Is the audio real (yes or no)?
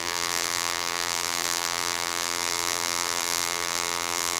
no